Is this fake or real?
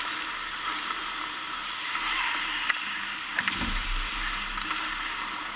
real